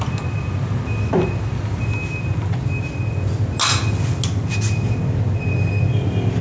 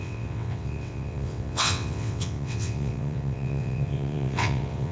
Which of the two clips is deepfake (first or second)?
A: second